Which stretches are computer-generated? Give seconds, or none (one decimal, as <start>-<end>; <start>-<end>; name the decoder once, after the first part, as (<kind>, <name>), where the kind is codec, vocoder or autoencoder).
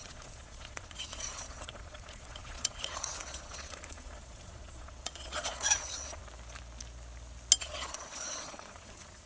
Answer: 0.0-6.2 (vocoder, Vocos); 7.6-9.3